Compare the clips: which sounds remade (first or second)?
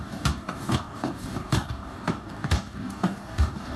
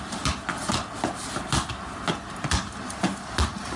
first